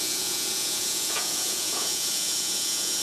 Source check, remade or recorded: remade